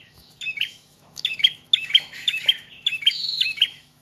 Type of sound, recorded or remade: remade